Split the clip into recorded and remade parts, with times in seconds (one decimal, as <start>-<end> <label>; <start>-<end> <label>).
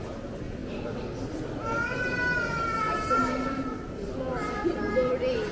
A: 0.0-5.5 recorded